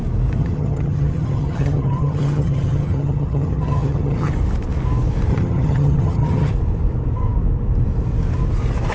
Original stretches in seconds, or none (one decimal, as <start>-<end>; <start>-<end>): 0.0-0.4; 4.3-5.3; 6.5-8.9